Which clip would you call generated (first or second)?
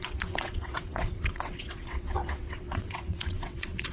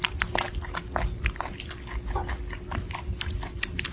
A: first